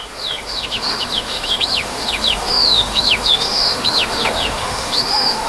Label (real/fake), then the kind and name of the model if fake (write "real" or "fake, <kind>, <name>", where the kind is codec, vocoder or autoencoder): fake, autoencoder, DAC-VAE